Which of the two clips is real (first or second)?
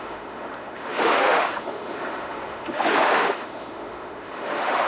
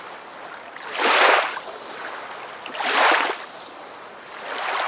second